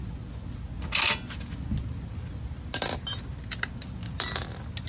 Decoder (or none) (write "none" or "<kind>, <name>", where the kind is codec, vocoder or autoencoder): none